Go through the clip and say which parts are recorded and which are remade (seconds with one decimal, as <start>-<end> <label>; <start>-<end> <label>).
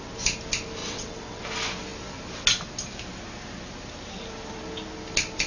0.0-0.8 recorded; 0.8-1.4 remade; 1.4-5.5 recorded